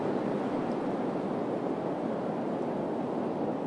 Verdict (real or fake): real